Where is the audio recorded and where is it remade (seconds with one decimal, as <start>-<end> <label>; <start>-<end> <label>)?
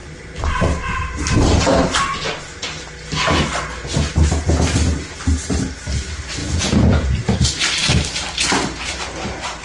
0.0-6.4 recorded; 6.4-7.1 remade; 7.1-9.6 recorded